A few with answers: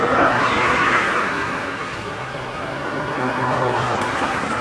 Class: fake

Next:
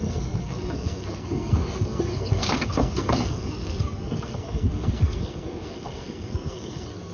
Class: fake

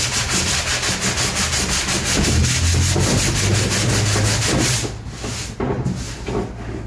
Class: real